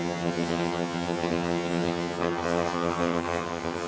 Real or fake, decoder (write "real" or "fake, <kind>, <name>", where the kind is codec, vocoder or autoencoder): fake, vocoder, HiFi-GAN